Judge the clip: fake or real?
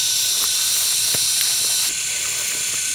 real